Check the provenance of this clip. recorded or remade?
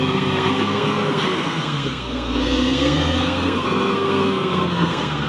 remade